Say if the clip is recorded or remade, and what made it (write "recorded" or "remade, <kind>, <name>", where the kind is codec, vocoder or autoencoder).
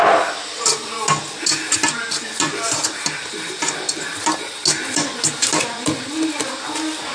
recorded